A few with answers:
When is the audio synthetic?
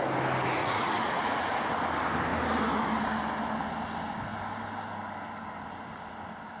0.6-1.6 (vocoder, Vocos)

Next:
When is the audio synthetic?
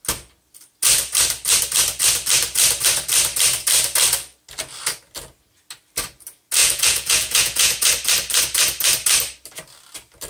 6.6-7.9 (vocoder, Vocos)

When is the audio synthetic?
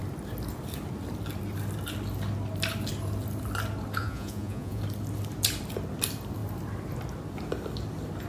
4.0-4.8 (vocoder, Vocos)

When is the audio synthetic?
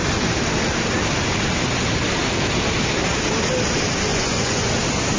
4.1-4.7 (vocoder, Vocos)